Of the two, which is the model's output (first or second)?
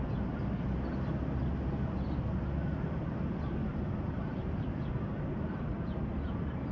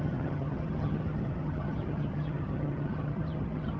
second